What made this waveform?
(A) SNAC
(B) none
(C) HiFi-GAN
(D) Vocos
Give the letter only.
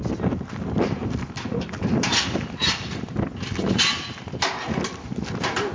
B